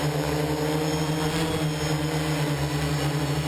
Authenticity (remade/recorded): recorded